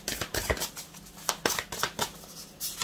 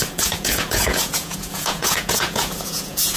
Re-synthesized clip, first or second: second